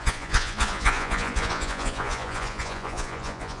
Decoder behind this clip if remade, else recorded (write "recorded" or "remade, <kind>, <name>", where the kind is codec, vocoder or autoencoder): remade, vocoder, Vocos